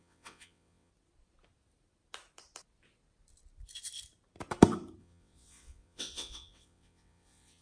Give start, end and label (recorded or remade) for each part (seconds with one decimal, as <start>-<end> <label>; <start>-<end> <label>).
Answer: 0.0-0.9 remade; 0.9-5.0 recorded; 5.0-7.6 remade